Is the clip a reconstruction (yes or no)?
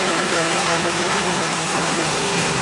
yes